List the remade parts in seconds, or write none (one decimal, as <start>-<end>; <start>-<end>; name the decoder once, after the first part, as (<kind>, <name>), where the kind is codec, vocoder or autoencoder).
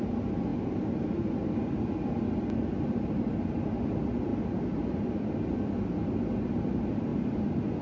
none